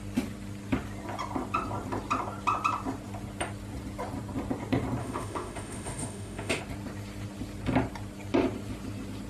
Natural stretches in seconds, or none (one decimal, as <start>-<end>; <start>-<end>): 0.0-5.0; 6.6-9.3